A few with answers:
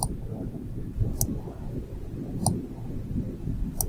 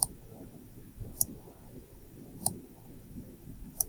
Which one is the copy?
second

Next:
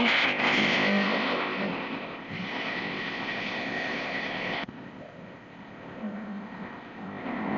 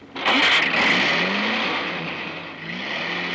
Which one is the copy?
first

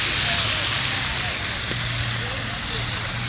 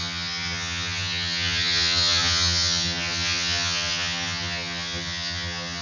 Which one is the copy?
second